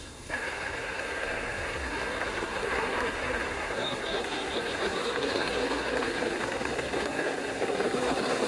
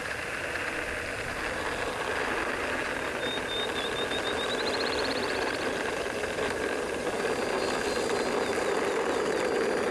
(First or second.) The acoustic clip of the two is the second